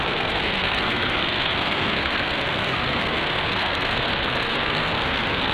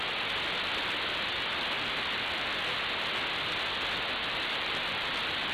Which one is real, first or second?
second